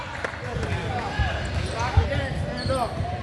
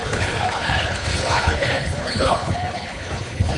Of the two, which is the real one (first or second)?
first